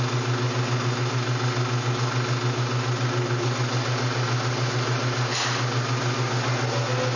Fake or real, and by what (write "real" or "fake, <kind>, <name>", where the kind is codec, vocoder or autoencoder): real